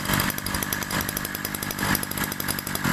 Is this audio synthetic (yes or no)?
no